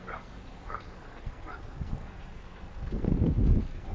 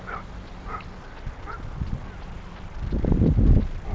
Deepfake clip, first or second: first